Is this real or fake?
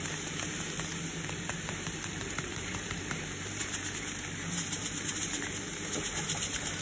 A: fake